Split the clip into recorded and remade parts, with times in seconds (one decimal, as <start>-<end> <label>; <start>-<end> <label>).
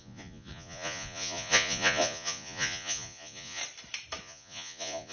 0.0-3.6 remade; 3.6-4.2 recorded; 4.2-5.1 remade